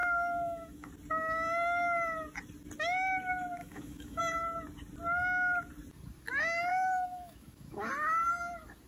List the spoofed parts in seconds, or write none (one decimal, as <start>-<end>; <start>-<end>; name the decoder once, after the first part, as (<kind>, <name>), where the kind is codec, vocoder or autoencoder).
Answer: 0.0-0.9 (autoencoder, DAC-VAE); 3.6-4.2; 6.7-7.9